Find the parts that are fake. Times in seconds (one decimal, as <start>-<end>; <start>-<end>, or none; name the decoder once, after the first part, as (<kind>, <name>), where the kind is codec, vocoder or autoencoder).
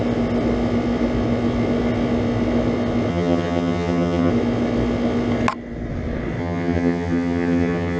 3.1-4.3 (vocoder, HiFi-GAN); 6.4-8.0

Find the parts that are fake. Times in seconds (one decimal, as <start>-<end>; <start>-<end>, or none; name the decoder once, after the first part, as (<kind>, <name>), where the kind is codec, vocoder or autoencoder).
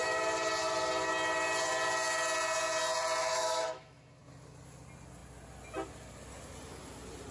3.2-4.2 (autoencoder, DAC-VAE)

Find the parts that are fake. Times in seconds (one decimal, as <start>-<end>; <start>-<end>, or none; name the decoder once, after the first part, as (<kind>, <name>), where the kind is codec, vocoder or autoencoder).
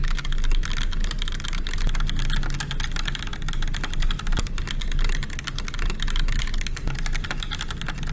none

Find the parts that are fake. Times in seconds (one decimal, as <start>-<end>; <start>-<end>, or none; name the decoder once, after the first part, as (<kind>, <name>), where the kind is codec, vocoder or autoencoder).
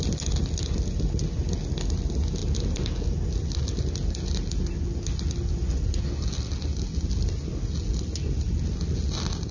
none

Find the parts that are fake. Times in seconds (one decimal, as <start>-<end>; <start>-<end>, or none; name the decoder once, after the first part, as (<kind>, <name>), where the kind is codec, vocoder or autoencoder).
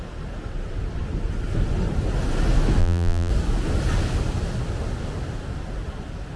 2.8-3.3 (vocoder, BigVGAN v2)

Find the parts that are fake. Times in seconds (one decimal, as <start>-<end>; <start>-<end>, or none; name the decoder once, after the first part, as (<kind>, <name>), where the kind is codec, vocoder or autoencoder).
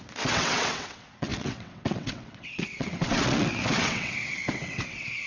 0.0-5.3 (vocoder, WaveNeXt)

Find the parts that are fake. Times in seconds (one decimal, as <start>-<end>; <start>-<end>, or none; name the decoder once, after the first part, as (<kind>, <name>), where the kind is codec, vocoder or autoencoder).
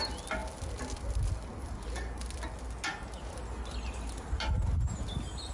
none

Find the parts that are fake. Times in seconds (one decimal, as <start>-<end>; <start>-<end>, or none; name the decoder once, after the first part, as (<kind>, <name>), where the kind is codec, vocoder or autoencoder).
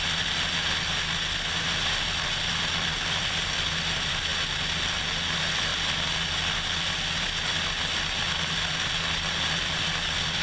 none